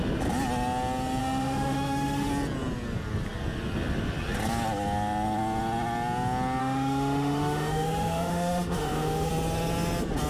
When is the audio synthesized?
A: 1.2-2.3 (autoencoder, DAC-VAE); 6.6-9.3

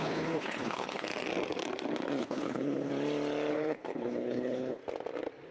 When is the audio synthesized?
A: 0.0-1.1 (codec, HILCodec); 2.2-2.9; 3.5-4.8

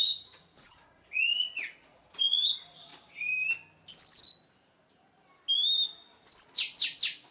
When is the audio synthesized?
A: 0.0-2.9 (vocoder, Vocos)

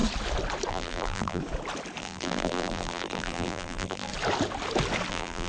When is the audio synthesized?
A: 0.7-1.4 (vocoder, BigVGAN v2); 2.0-4.1; 5.1-5.5

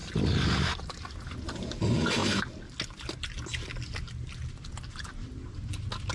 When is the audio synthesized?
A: none

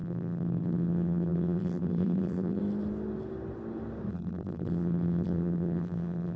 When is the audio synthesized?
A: 0.0-2.6 (vocoder, BigVGAN v2); 4.1-6.4

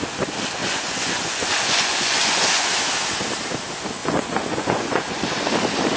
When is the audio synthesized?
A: 0.6-2.7 (vocoder, Vocos); 4.0-5.2